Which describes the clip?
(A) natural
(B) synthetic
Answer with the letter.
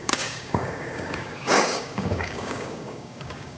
B